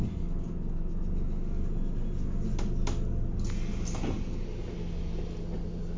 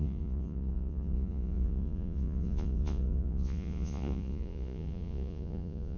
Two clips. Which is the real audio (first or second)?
first